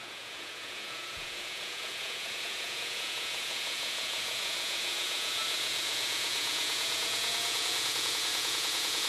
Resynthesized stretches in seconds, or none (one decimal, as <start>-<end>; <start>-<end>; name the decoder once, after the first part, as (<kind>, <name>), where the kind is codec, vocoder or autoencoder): 0.0-9.1 (vocoder, Vocos)